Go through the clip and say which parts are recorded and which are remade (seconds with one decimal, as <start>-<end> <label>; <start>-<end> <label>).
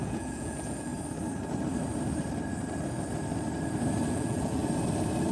0.0-0.9 remade; 0.9-4.1 recorded; 4.1-4.6 remade; 4.6-5.3 recorded